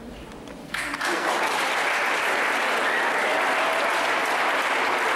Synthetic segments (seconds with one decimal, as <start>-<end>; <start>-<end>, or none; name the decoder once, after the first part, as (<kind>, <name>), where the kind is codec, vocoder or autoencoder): 0.6-1.3 (codec, SNAC)